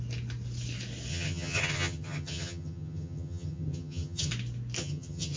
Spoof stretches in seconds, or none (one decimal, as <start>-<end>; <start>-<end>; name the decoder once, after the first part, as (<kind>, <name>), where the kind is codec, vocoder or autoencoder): 1.1-4.3 (vocoder, HiFi-GAN); 4.8-5.4

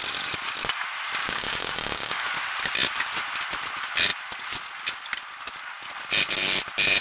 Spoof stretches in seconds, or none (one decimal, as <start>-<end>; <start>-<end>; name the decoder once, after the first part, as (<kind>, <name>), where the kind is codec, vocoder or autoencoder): 1.2-2.3 (codec, DAC)

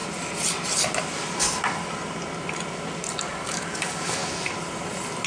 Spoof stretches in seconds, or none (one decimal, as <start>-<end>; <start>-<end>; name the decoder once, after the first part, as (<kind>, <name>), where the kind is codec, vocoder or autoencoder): 3.2-4.2 (codec, DAC)

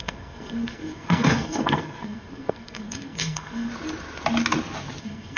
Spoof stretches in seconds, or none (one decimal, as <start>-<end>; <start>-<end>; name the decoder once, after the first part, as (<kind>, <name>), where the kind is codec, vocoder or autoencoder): 0.0-3.7 (codec, SNAC); 5.0-5.4

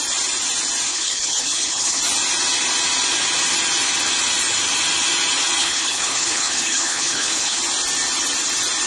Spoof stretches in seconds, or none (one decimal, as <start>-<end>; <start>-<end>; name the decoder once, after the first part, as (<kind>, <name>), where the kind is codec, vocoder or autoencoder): 0.9-2.0 (codec, HILCodec); 5.6-7.6

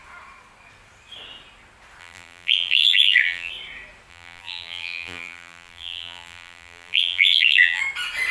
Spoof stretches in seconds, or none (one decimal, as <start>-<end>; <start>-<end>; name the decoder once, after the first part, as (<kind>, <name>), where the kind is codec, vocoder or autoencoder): 2.0-3.5 (vocoder, BigVGAN v2); 4.1-7.8